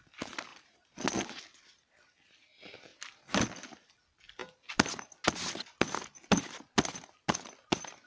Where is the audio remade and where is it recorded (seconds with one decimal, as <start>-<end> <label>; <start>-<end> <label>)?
0.0-0.5 recorded; 0.5-1.4 remade; 1.4-8.1 recorded